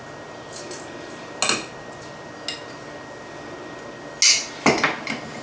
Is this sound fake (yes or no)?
no